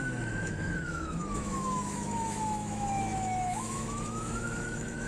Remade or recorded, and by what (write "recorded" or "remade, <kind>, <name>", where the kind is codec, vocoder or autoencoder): remade, autoencoder, DAC-VAE